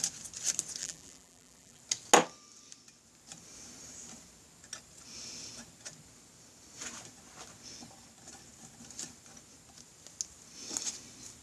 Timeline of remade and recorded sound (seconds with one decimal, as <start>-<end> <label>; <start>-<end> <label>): 0.0-0.8 recorded; 0.8-1.8 remade; 1.8-11.4 recorded